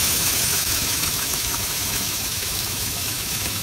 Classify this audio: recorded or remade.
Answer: remade